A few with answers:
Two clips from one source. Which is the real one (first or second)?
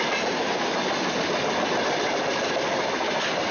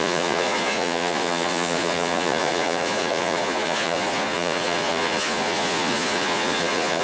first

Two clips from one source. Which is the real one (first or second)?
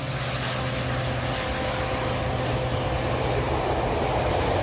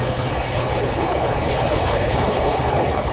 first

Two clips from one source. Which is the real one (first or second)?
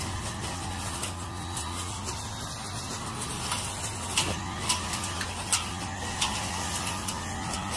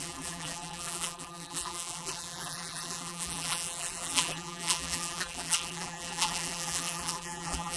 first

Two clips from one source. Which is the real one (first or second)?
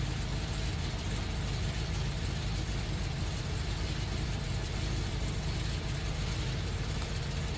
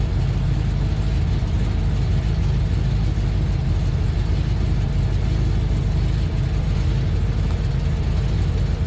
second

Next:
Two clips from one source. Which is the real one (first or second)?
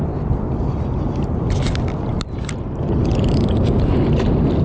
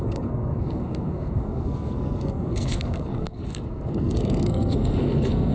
first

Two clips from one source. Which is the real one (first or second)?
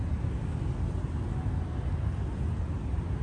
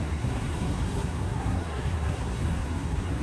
first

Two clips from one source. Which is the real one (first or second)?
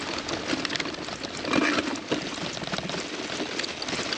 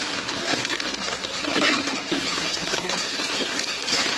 first